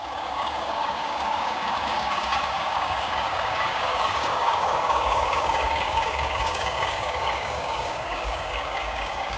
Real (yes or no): no